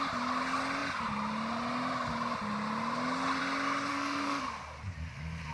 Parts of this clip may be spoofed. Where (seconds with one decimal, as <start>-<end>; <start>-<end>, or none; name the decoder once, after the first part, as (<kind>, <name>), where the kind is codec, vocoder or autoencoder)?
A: 3.9-4.4 (codec, SNAC)